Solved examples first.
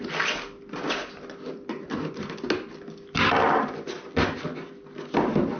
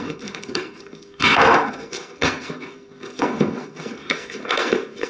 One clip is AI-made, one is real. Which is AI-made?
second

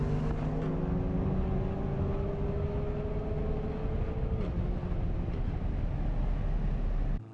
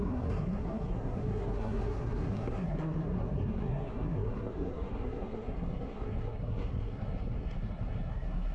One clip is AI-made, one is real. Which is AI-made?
second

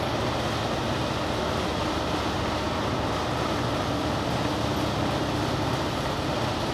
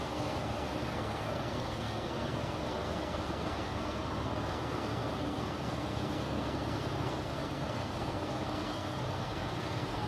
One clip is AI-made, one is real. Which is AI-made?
second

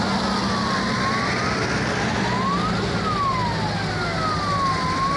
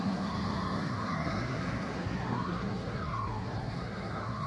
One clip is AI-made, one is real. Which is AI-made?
second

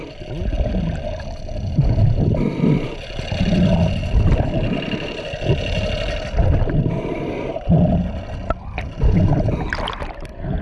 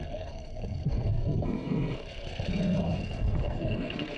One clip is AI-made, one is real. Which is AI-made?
second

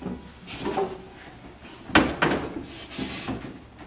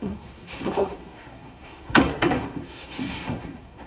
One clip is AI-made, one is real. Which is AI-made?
second